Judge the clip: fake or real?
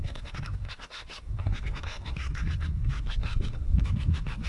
fake